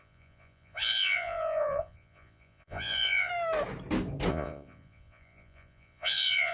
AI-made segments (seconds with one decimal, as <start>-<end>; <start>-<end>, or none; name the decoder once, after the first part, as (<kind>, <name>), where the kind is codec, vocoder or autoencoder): 0.0-3.3 (vocoder, Vocos); 4.3-6.5